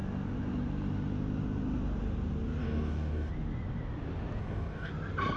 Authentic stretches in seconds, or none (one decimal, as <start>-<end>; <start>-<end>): 0.0-2.6; 3.3-4.4; 4.9-5.4